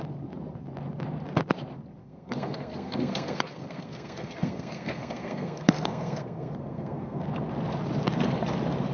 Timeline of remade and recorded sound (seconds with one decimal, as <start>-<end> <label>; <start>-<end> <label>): 0.0-2.0 recorded; 2.0-7.2 remade; 7.2-8.9 recorded